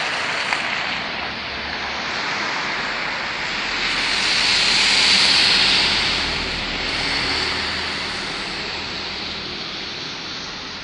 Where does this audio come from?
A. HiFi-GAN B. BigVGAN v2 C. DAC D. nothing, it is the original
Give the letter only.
D